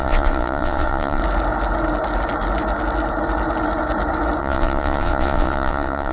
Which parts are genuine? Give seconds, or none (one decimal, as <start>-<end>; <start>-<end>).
1.2-4.4